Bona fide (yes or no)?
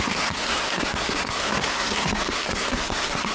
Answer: no